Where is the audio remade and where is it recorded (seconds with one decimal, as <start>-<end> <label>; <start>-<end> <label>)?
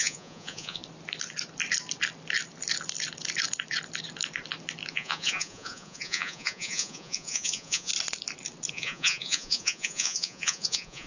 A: 0.0-0.8 remade; 0.8-4.9 recorded; 4.9-7.9 remade; 7.9-8.7 recorded; 8.7-11.1 remade